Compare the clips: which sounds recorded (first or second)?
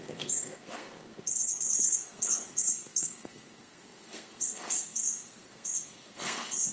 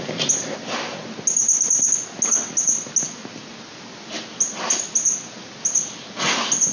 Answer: second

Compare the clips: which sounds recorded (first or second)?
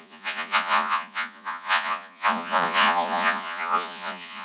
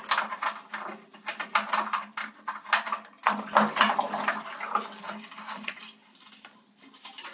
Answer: second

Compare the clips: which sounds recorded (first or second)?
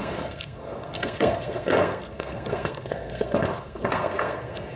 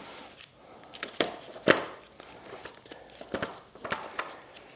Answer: second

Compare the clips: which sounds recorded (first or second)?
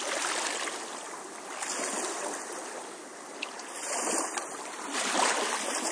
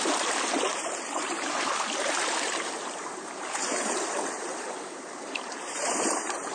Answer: first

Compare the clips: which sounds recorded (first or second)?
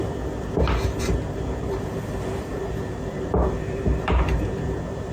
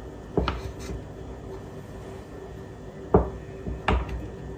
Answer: second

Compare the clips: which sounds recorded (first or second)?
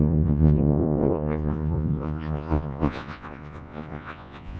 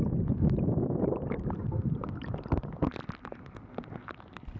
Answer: second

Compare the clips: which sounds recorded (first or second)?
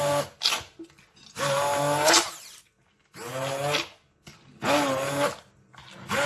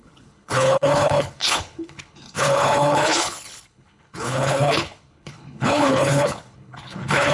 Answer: first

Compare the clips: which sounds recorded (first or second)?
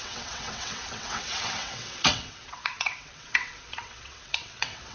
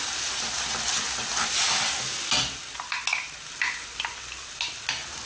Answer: second